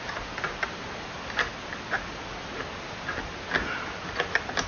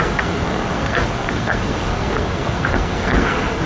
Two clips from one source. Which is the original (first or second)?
first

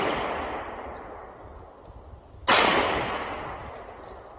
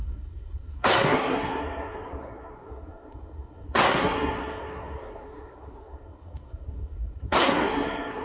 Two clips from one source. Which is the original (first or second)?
first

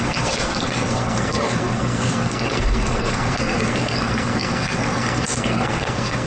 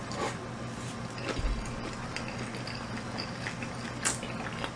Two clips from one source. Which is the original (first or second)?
second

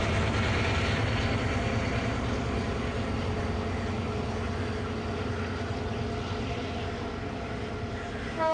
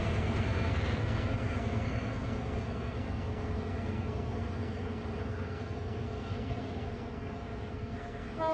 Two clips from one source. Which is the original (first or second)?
first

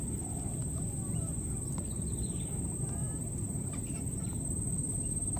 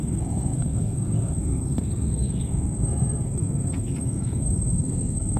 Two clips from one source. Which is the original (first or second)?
first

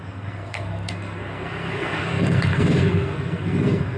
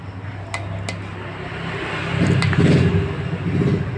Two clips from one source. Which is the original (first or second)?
second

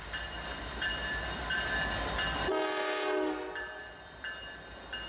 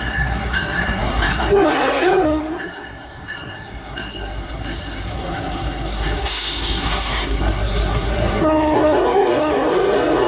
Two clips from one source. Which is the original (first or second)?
first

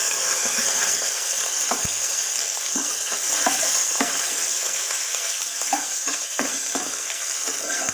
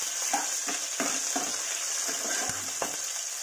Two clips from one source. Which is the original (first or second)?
second